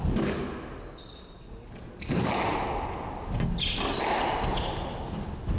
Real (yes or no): yes